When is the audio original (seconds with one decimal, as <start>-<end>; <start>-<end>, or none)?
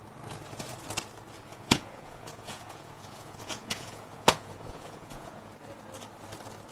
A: 0.0-1.5; 5.5-6.7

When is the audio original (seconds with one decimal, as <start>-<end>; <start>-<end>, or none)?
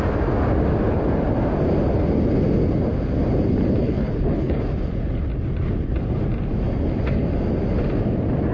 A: 0.0-3.8; 4.6-8.5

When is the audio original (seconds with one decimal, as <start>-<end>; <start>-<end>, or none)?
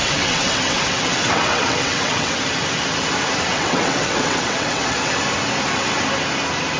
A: 2.4-3.5; 5.1-6.8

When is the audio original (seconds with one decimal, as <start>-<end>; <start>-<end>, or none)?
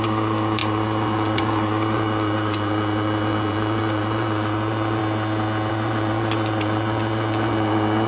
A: 5.0-5.7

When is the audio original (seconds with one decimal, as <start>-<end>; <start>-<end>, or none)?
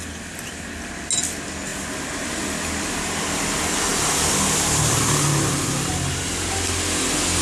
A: 0.0-7.4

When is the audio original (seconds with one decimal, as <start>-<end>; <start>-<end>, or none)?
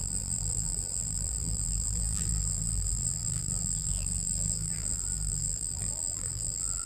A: none